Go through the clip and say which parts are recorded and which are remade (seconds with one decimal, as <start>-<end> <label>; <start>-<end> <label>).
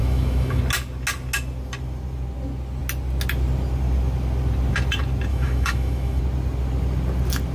0.0-0.6 remade; 0.6-5.3 recorded; 5.3-6.2 remade; 6.2-7.5 recorded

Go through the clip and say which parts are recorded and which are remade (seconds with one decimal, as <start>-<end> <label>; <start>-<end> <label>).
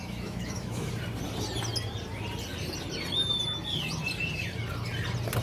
0.0-0.9 remade; 0.9-5.4 recorded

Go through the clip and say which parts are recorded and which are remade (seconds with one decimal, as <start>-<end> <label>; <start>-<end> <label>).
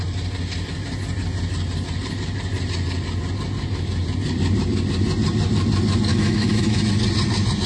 0.0-6.1 recorded; 6.1-6.9 remade; 6.9-7.7 recorded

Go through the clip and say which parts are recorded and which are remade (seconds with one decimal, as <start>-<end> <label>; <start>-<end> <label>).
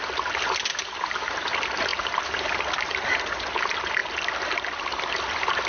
0.0-5.7 recorded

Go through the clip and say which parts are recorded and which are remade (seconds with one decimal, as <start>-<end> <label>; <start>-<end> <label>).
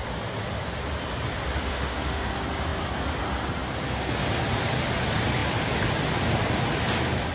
0.0-1.7 recorded; 1.7-2.3 remade; 2.3-7.3 recorded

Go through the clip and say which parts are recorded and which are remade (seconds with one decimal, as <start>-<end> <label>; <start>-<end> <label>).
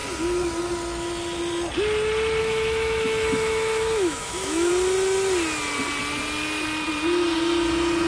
0.0-2.4 recorded; 2.4-4.7 remade; 4.7-8.1 recorded